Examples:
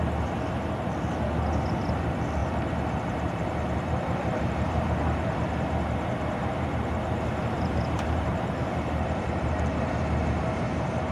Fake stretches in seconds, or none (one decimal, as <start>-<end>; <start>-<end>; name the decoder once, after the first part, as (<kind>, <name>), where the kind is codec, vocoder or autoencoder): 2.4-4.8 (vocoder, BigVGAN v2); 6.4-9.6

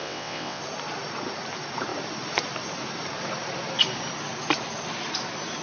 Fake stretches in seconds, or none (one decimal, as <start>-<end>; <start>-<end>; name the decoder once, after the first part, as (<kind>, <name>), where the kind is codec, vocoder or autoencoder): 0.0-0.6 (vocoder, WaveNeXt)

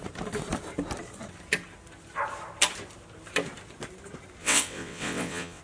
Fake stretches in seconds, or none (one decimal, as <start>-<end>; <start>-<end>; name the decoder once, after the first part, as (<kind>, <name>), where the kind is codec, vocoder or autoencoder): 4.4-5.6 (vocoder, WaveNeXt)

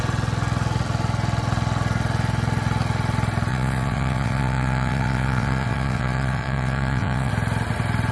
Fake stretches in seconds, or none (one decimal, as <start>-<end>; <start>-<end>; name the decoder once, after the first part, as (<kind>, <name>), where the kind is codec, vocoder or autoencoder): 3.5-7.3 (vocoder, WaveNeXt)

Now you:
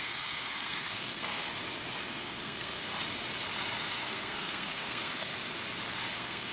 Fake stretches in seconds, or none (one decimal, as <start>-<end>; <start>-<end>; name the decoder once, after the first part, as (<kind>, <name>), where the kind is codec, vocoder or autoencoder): 0.0-1.5 (codec, SNAC); 2.1-2.9; 3.8-5.3; 6.1-6.5

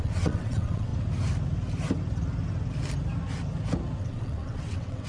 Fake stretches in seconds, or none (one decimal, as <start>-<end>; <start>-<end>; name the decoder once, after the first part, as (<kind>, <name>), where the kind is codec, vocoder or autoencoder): 0.0-0.9 (vocoder, WaveNeXt); 4.0-5.1